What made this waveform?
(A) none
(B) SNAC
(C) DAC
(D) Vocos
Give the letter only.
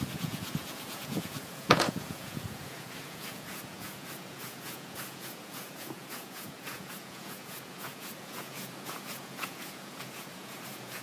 D